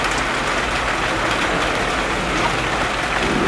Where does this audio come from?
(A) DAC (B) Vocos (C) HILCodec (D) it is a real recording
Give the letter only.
D